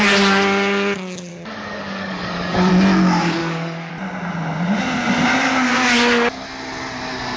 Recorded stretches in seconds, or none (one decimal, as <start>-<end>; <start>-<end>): 0.0-1.3; 2.7-3.4; 3.9-7.4

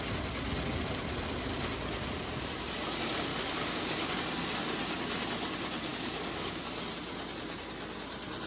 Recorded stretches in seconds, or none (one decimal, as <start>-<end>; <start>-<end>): 0.0-3.3; 4.2-5.9; 6.6-8.5